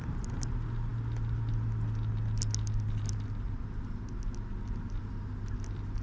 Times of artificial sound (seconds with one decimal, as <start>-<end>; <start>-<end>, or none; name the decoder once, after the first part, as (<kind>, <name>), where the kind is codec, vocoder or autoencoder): none